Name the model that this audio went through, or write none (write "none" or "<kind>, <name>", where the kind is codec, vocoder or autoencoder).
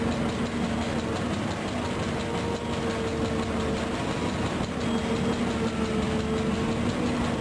none